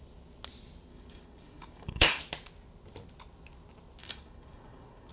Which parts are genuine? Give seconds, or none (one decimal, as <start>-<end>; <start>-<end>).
0.0-0.9; 2.2-4.0

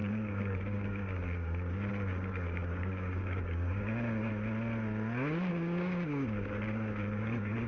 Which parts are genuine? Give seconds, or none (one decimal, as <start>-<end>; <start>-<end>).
4.3-5.5

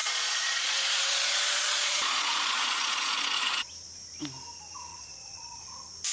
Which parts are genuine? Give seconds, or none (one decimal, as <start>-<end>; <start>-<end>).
3.7-4.9; 5.6-6.1

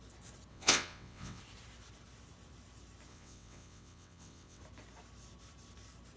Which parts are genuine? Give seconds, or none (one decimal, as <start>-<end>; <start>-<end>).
0.0-0.5; 1.4-3.1; 4.6-6.2

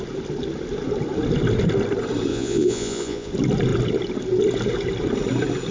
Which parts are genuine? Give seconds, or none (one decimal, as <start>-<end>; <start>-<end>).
0.0-2.3; 3.3-5.7